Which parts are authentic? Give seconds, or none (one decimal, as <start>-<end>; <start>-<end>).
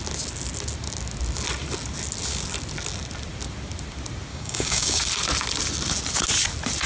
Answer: 0.0-4.3; 5.0-6.9